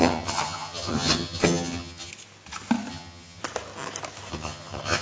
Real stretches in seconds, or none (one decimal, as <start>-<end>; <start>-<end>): 2.1-2.9; 3.4-4.3